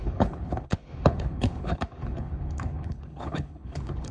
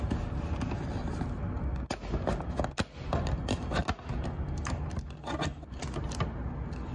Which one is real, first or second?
second